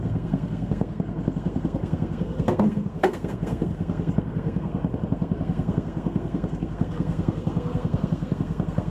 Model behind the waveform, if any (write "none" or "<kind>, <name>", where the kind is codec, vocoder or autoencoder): codec, SNAC